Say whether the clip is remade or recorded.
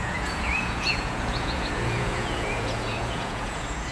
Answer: remade